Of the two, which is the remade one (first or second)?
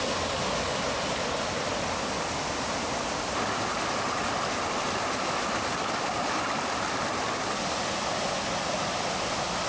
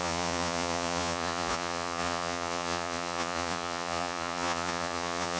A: second